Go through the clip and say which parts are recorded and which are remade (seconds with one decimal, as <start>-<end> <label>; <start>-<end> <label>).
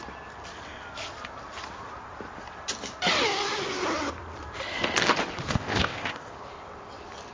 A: 0.0-5.5 recorded; 5.5-6.3 remade; 6.3-7.3 recorded